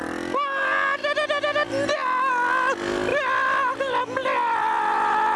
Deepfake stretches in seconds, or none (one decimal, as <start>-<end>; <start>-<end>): none